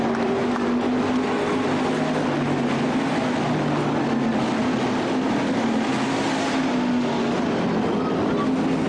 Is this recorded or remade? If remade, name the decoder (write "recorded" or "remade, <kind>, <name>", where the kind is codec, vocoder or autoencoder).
recorded